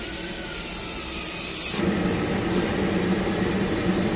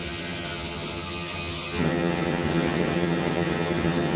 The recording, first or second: first